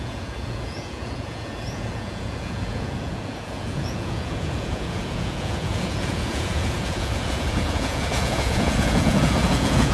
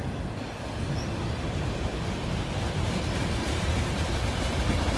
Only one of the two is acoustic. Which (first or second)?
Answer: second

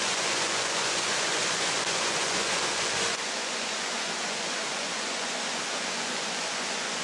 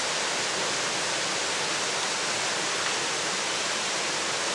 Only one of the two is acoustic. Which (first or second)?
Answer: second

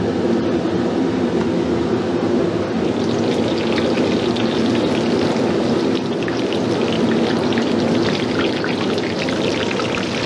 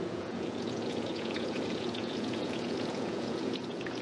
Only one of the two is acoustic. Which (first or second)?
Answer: first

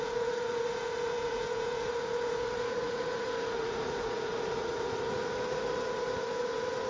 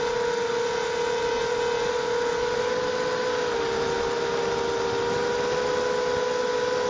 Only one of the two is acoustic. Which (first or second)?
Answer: second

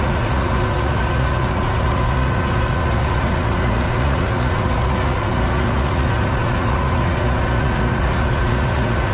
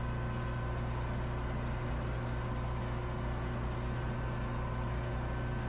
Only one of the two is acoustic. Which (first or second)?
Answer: second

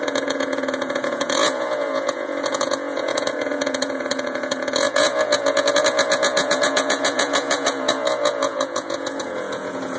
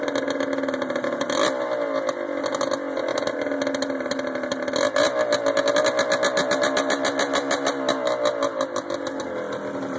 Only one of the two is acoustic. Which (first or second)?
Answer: second